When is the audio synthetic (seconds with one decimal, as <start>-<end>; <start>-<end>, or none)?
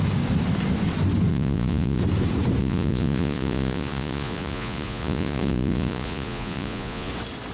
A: 1.3-2.0; 2.6-7.1